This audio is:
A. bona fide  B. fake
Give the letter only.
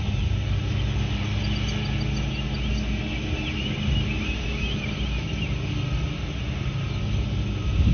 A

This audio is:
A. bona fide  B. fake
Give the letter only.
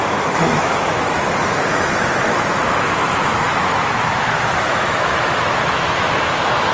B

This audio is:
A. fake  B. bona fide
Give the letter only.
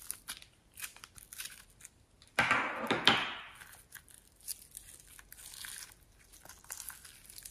B